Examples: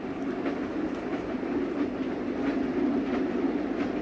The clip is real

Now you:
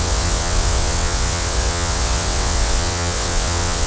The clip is fake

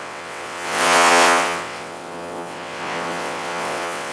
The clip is fake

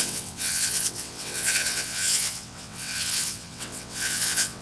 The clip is fake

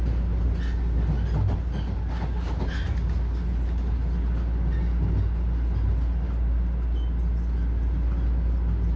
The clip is real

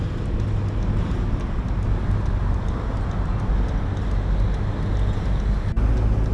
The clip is real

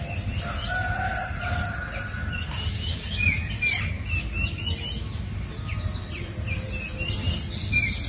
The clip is real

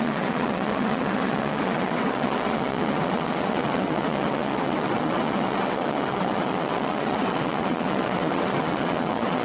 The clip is fake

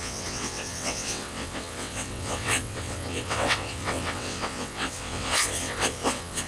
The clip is fake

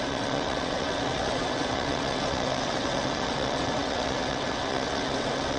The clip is fake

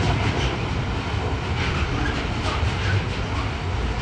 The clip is real